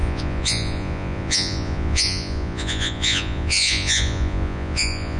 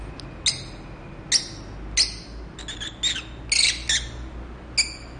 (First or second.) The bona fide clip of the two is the second